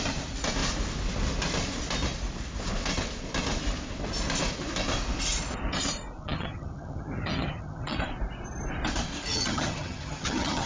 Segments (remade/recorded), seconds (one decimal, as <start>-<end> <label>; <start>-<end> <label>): 0.0-6.2 recorded; 6.2-8.0 remade; 8.0-9.3 recorded; 9.3-10.7 remade